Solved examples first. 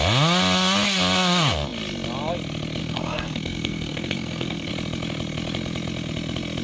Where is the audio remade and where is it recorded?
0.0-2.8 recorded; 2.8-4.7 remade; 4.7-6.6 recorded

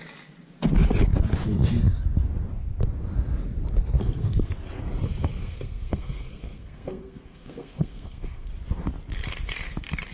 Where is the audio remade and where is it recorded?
0.0-4.0 recorded; 4.0-4.5 remade; 4.5-5.4 recorded; 5.4-8.5 remade; 8.5-10.1 recorded

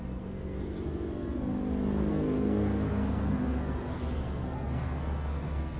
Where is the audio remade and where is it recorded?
0.0-1.5 remade; 1.5-2.1 recorded; 2.1-5.8 remade

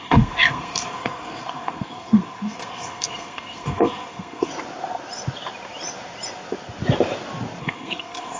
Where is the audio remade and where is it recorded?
0.0-4.5 remade; 4.5-7.6 recorded; 7.6-8.4 remade

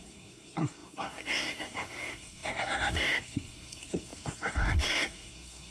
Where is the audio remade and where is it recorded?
0.0-5.7 remade